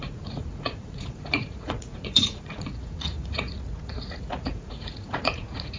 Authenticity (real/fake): fake